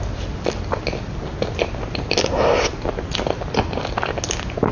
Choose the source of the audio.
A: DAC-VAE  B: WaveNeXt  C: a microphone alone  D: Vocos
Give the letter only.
C